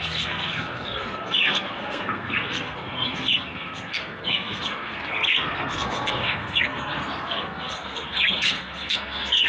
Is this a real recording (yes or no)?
no